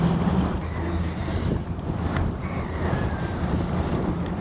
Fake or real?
fake